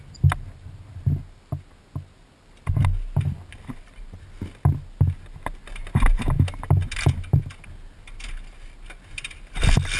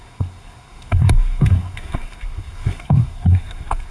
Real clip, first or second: first